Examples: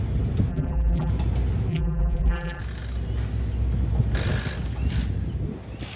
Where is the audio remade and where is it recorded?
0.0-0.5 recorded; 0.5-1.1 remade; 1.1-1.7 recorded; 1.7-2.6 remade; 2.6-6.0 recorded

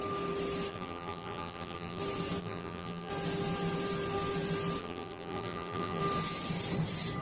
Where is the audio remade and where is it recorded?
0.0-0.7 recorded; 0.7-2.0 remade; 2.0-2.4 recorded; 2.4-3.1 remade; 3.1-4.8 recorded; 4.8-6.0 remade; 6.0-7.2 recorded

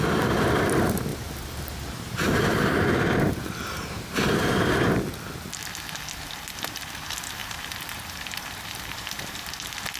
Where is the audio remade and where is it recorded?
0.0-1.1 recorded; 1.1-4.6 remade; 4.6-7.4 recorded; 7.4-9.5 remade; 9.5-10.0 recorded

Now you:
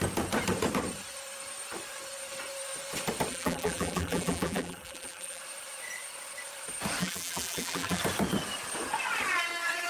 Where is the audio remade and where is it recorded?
0.0-3.3 recorded; 3.3-5.4 remade; 5.4-7.0 recorded; 7.0-8.0 remade; 8.0-9.9 recorded

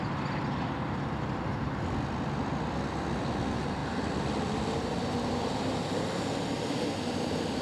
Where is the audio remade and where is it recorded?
0.0-3.8 recorded; 3.8-6.3 remade; 6.3-7.6 recorded

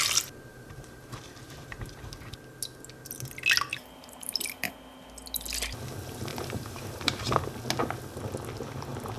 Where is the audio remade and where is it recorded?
0.0-0.5 recorded; 0.5-2.4 remade; 2.4-3.7 recorded; 3.7-4.7 remade; 4.7-6.3 recorded; 6.3-7.5 remade; 7.5-9.2 recorded

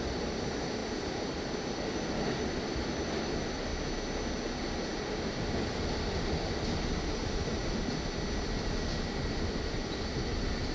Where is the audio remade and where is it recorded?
0.0-3.7 remade; 3.7-5.0 recorded; 5.0-7.6 remade; 7.6-9.1 recorded; 9.1-10.7 remade

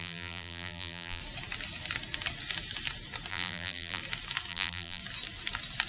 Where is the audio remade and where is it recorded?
0.0-1.2 remade; 1.2-3.3 recorded; 3.3-4.0 remade; 4.0-4.5 recorded; 4.5-5.0 remade; 5.0-5.9 recorded